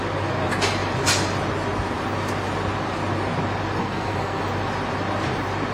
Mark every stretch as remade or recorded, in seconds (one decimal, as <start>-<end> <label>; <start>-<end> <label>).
0.0-3.8 recorded; 3.8-4.4 remade; 4.4-5.7 recorded